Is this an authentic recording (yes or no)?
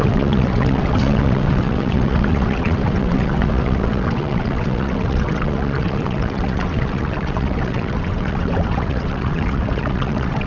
no